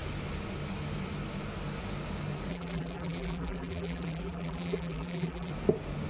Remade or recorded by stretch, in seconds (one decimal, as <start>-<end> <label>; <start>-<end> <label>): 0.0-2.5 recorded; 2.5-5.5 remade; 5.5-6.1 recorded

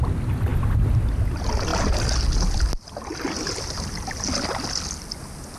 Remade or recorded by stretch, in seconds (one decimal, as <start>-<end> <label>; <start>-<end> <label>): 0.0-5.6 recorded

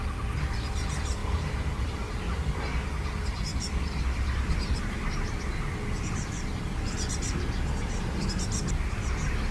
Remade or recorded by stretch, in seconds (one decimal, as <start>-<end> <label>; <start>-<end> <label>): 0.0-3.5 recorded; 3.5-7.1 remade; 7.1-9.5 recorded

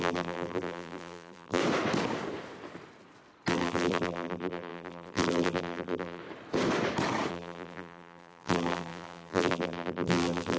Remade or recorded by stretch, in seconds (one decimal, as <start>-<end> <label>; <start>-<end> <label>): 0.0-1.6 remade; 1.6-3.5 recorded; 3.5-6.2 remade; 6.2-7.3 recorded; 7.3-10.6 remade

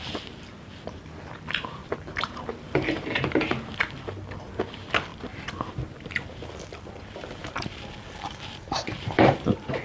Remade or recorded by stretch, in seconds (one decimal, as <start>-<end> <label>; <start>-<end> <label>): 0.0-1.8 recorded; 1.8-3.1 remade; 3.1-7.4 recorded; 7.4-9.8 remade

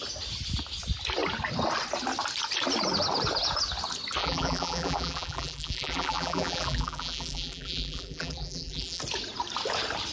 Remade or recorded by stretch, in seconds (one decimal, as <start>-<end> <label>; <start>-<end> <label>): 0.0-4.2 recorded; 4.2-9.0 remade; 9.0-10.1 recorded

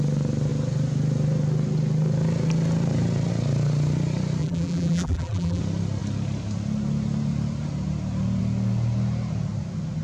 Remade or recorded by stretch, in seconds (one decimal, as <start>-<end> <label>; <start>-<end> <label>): 0.0-4.4 recorded; 4.4-5.6 remade; 5.6-10.0 recorded